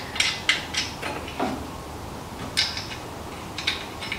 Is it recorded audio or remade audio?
recorded